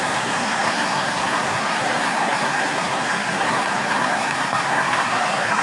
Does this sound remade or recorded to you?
remade